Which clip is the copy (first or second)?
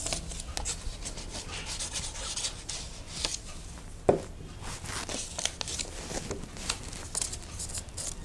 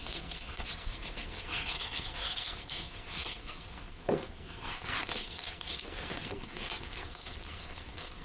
second